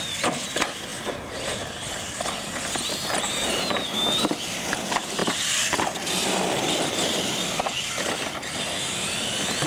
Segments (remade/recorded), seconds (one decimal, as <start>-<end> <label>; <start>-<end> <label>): 0.0-0.9 remade; 0.9-2.3 recorded; 2.3-9.7 remade